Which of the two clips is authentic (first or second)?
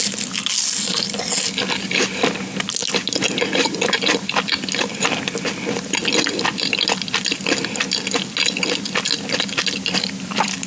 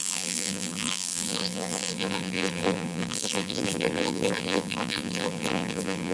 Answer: first